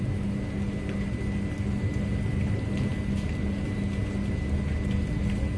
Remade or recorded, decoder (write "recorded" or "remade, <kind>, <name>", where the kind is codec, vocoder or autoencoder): recorded